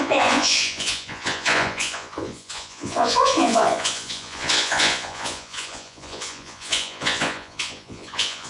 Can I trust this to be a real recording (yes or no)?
no